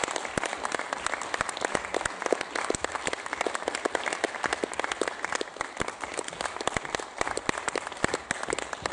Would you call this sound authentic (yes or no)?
yes